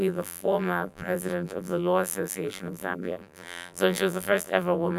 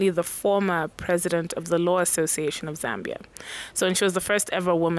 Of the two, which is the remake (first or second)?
first